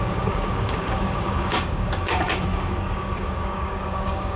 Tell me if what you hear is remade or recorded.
remade